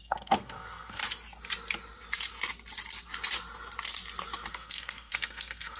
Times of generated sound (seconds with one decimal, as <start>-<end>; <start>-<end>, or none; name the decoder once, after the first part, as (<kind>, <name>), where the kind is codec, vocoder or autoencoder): 0.0-1.0 (codec, SNAC); 4.5-5.8